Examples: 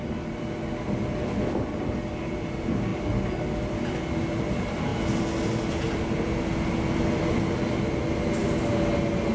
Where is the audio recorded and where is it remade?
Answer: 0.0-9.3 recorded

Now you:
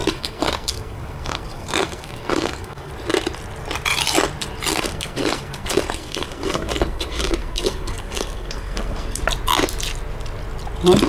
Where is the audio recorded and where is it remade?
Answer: 0.0-2.9 remade; 2.9-4.7 recorded; 4.7-9.2 remade; 9.2-11.1 recorded

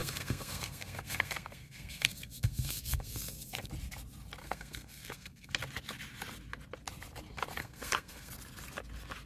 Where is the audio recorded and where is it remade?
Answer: 0.0-3.7 remade; 3.7-4.4 recorded; 4.4-5.5 remade; 5.5-7.6 recorded; 7.6-8.3 remade; 8.3-9.3 recorded

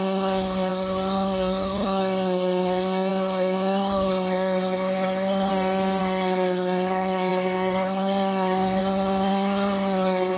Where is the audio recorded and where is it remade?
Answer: 0.0-5.5 remade; 5.5-6.0 recorded; 6.0-10.4 remade

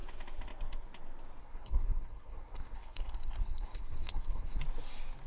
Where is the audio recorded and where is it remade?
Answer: 0.0-1.4 recorded; 1.4-4.6 remade; 4.6-5.3 recorded

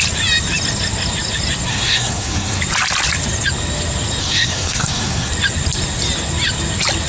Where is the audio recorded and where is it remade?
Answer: 0.0-1.7 recorded; 1.7-2.6 remade; 2.6-4.2 recorded; 4.2-5.3 remade; 5.3-7.1 recorded